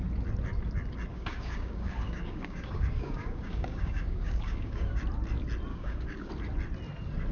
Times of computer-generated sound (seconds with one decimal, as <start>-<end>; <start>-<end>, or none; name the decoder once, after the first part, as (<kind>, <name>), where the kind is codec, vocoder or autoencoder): 1.1-5.0 (codec, DAC); 5.7-6.3